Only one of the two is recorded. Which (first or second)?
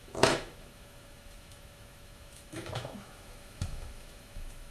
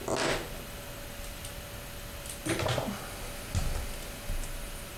second